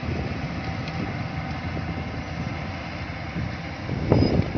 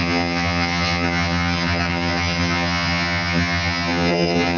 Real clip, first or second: first